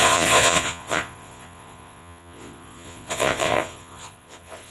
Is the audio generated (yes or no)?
yes